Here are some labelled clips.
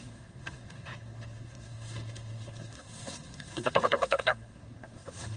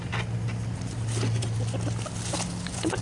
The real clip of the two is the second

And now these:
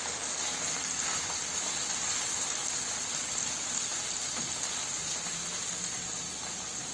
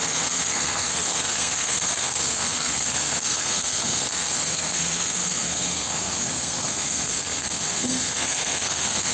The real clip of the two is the first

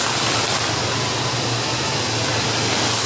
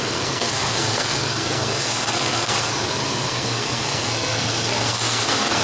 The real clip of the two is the first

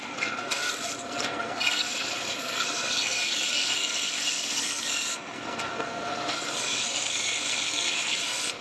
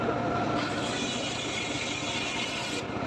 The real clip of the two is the second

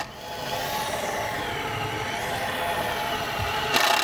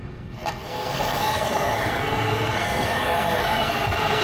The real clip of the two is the first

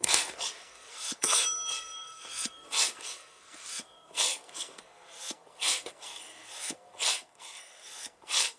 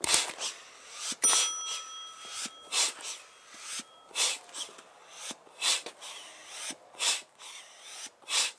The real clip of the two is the second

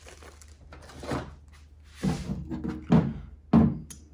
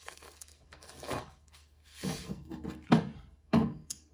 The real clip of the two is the first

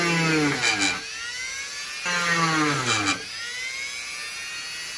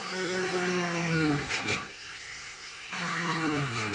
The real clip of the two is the first